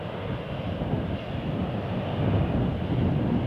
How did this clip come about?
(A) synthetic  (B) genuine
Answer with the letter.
B